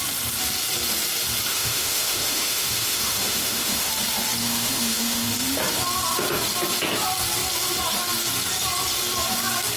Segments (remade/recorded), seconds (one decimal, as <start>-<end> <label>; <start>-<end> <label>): 0.0-1.5 recorded; 1.5-3.9 remade; 3.9-4.4 recorded; 4.4-5.3 remade; 5.3-9.8 recorded